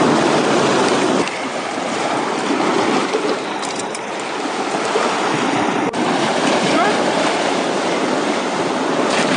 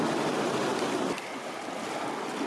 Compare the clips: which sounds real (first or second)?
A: second